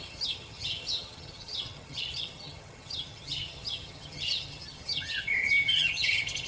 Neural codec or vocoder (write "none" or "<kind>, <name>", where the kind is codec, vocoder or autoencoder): vocoder, HiFi-GAN